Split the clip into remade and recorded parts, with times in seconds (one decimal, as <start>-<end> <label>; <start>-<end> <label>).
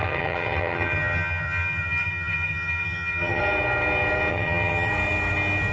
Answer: 0.0-3.4 remade; 3.4-4.3 recorded; 4.3-4.9 remade; 4.9-5.7 recorded